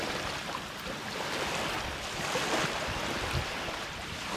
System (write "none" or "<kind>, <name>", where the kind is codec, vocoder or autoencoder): none